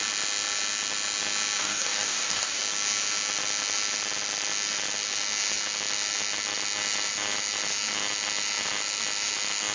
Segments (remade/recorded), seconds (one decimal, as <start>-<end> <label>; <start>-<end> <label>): 0.0-1.6 recorded; 1.6-2.6 remade; 2.6-9.7 recorded